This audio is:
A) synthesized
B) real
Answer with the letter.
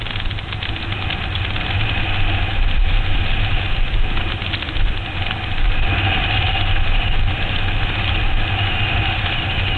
B